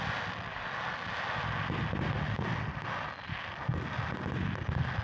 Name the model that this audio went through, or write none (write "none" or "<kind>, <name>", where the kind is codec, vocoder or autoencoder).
none